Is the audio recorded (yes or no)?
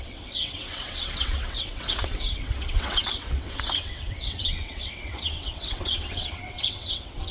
no